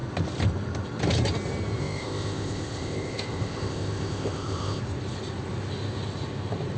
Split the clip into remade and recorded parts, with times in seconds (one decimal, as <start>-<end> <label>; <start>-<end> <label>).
0.0-1.8 recorded; 1.8-4.8 remade; 4.8-6.8 recorded